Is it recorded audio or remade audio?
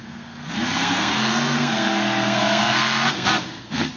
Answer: remade